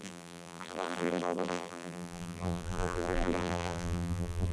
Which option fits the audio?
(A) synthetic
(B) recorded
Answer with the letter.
A